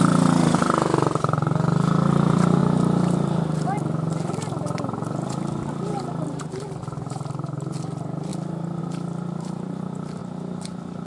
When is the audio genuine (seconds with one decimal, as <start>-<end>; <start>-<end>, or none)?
2.6-6.8; 8.3-8.8; 10.2-11.1